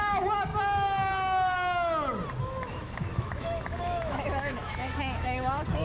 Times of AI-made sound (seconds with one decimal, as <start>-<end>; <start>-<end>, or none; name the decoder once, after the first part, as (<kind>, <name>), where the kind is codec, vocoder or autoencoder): 0.0-0.5 (autoencoder, DAC-VAE); 2.4-5.8